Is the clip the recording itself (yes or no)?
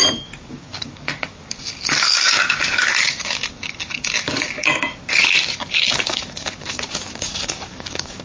no